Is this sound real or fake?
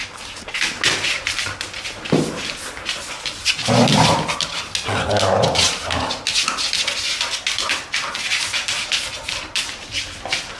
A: real